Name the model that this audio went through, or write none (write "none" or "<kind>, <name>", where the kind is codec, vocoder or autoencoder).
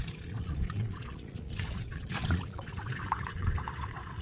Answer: vocoder, Vocos